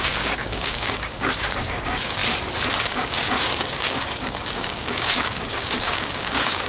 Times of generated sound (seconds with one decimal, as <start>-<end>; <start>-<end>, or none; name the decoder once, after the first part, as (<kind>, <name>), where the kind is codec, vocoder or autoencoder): 0.0-2.2 (codec, DAC); 2.8-6.7